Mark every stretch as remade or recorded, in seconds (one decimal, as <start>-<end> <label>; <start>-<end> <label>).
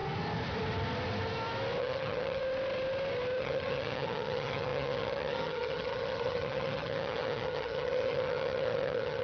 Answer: 0.0-1.8 recorded; 1.8-2.4 remade; 2.4-3.4 recorded; 3.4-9.2 remade